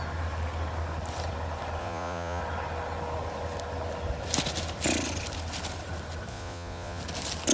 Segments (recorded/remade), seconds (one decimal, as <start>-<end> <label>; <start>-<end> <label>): 0.0-1.8 recorded; 1.8-2.4 remade; 2.4-6.3 recorded; 6.3-7.0 remade; 7.0-7.5 recorded